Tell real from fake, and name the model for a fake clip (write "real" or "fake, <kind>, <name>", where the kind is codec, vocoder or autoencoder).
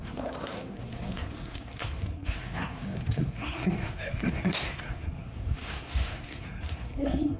fake, codec, SNAC